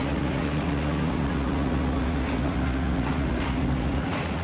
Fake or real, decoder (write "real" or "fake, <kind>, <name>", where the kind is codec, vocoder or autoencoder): fake, vocoder, Vocos